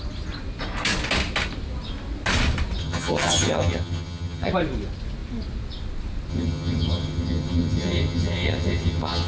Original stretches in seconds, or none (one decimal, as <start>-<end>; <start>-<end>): 0.0-2.8; 4.5-6.3